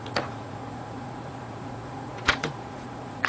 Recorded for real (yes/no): no